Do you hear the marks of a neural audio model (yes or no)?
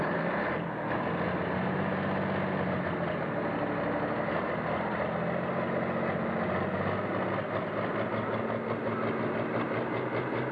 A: no